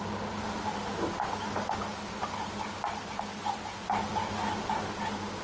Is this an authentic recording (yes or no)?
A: yes